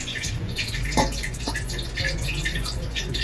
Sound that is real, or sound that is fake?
fake